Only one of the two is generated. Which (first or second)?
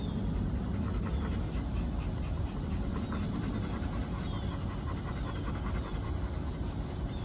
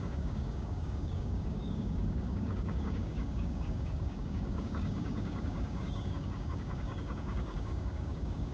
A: second